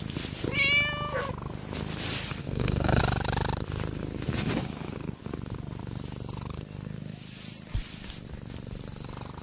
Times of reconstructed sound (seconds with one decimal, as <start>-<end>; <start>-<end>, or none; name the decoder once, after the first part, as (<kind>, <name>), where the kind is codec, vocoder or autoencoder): 2.4-3.0 (codec, SNAC)

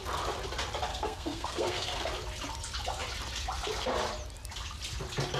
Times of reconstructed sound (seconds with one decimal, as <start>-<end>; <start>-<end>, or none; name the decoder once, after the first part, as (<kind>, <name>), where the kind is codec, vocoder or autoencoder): 0.9-2.1 (codec, SNAC)

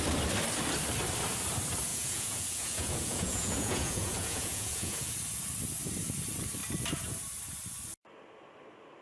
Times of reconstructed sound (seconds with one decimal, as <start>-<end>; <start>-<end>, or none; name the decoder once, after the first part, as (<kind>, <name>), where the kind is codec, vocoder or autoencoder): 1.9-5.1 (vocoder, Vocos)

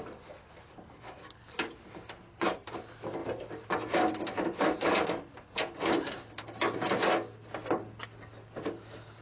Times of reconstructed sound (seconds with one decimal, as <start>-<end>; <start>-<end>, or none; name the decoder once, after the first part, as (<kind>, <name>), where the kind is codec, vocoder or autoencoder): none

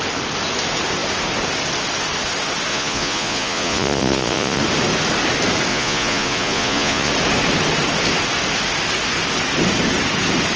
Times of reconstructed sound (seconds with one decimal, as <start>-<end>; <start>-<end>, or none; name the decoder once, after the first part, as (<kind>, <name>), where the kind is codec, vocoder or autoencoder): 2.7-4.6 (vocoder, Vocos); 5.7-7.1